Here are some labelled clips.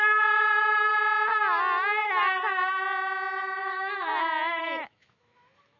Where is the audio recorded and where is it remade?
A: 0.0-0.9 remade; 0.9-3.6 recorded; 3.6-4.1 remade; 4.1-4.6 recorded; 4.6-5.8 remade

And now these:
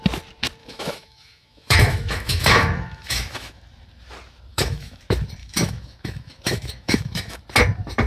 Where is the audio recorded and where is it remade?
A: 0.0-0.6 recorded; 0.6-3.6 remade; 3.6-4.5 recorded; 4.5-5.0 remade; 5.0-5.4 recorded; 5.4-7.4 remade; 7.4-8.1 recorded

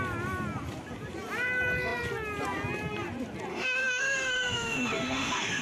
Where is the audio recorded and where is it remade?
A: 0.0-3.5 recorded; 3.5-5.6 remade